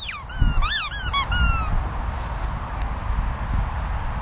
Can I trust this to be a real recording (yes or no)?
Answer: yes